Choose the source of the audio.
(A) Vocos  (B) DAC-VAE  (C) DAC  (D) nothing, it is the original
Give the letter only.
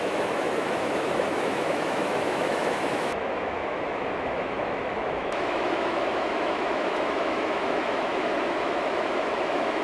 B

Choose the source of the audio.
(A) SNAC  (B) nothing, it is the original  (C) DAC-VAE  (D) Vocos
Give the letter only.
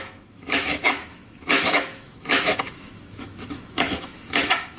C